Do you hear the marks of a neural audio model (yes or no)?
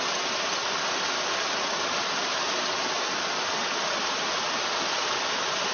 no